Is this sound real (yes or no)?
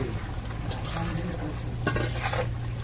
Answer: yes